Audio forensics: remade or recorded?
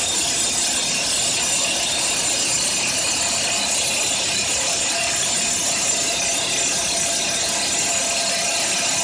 recorded